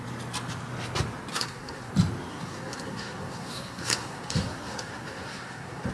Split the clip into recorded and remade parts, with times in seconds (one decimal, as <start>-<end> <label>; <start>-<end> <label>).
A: 0.0-1.3 recorded; 1.3-1.9 remade; 1.9-2.3 recorded; 2.3-5.9 remade